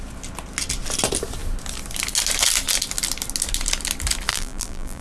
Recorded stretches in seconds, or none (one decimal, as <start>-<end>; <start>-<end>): 0.0-4.3

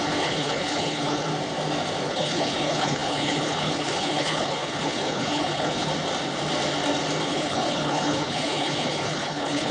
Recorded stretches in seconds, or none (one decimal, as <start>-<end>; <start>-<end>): 1.3-2.1; 5.9-7.2

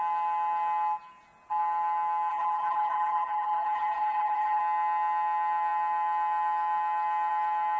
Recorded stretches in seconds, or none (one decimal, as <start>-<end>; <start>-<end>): 0.0-2.3; 4.6-7.8